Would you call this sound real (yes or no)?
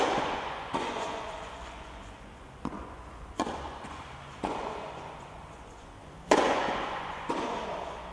no